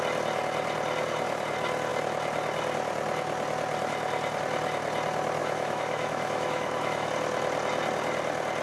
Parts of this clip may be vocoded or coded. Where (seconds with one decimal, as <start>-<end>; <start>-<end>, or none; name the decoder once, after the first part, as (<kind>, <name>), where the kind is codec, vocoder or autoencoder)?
5.4-7.1 (autoencoder, DAC-VAE)